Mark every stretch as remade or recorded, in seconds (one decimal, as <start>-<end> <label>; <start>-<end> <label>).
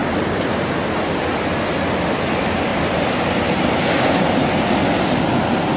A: 0.0-1.2 remade; 1.2-2.7 recorded; 2.7-4.5 remade; 4.5-5.8 recorded